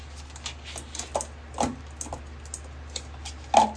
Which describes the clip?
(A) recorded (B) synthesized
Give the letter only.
A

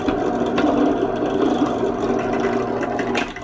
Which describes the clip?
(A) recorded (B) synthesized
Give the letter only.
A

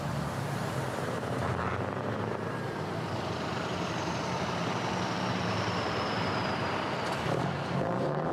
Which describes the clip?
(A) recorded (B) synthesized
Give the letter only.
B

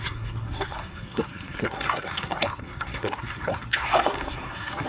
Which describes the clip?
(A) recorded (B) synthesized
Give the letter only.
B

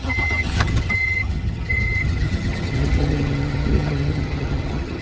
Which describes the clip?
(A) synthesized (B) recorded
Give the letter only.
A